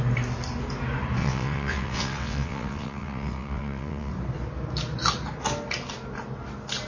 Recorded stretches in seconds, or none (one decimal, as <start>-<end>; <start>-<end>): 0.0-1.2; 4.1-6.9